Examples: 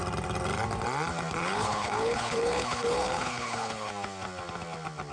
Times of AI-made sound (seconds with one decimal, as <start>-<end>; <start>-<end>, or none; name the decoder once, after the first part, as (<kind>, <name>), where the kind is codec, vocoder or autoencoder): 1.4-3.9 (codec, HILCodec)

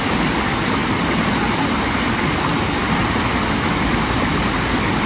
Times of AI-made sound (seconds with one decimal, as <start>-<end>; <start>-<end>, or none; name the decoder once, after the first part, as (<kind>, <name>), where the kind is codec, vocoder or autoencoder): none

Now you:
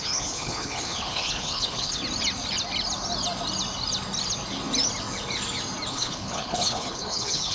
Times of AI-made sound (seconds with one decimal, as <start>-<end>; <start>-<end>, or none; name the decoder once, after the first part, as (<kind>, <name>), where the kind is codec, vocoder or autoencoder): 0.0-2.0 (codec, HILCodec); 5.9-7.5

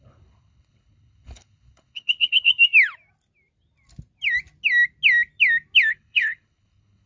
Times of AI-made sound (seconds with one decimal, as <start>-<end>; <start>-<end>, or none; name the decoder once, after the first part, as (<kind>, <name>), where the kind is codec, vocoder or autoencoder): 0.0-2.5 (codec, HILCodec); 5.9-7.1

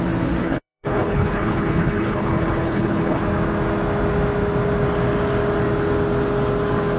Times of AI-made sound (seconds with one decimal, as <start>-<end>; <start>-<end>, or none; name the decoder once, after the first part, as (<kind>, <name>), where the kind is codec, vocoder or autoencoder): 0.4-3.2 (codec, HILCodec)

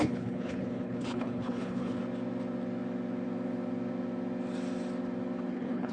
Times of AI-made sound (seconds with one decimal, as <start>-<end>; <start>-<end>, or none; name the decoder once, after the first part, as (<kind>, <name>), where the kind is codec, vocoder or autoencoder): 0.0-2.0 (codec, HILCodec); 5.5-5.9